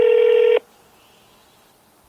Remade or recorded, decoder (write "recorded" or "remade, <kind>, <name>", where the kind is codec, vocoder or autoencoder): recorded